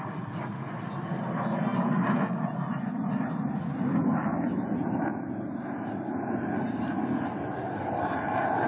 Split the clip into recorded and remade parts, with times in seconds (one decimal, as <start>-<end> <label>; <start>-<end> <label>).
0.0-8.7 recorded